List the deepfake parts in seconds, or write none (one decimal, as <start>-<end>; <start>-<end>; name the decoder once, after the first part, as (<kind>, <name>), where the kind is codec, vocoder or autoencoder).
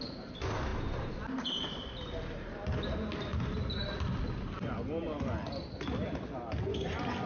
none